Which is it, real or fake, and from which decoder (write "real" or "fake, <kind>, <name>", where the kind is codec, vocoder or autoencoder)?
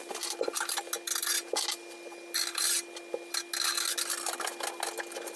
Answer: real